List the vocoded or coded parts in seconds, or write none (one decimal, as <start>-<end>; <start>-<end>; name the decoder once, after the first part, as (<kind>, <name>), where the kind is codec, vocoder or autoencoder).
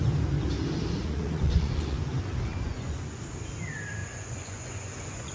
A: 1.0-2.1 (vocoder, Vocos); 2.5-3.2; 4.0-5.3